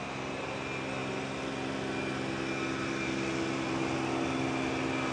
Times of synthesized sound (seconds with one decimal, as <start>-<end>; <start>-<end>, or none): none